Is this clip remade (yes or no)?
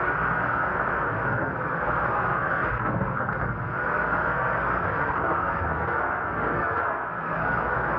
yes